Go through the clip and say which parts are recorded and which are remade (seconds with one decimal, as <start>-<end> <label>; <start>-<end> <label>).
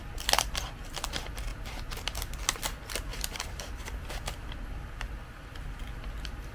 0.0-3.1 recorded; 3.1-4.7 remade; 4.7-6.5 recorded